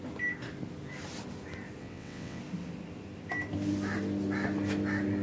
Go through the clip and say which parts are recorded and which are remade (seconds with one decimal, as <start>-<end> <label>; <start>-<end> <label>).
0.0-1.8 recorded; 1.8-2.4 remade; 2.4-5.2 recorded